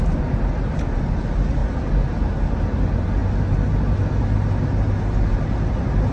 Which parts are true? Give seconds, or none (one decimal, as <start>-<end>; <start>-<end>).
0.0-6.1